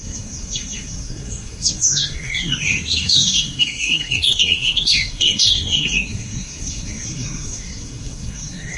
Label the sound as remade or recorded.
remade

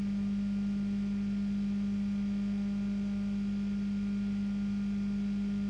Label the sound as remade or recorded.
recorded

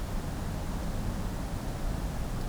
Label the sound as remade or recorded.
recorded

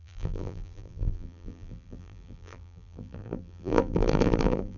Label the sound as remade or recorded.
remade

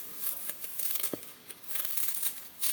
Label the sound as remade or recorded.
remade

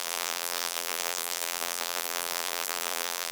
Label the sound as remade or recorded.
remade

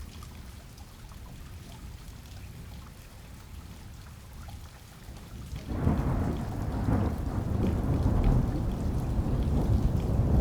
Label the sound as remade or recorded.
recorded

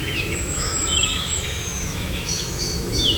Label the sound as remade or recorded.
remade